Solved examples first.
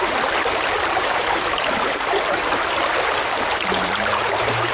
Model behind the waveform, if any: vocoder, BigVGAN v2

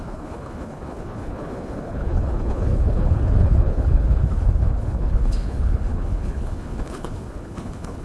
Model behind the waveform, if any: codec, HILCodec